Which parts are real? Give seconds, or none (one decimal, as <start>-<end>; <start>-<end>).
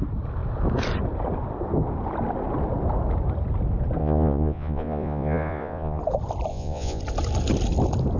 0.0-4.0; 6.0-6.5; 7.0-8.2